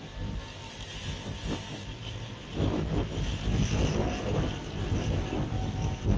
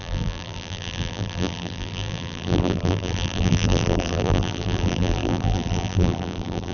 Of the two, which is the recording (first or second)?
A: first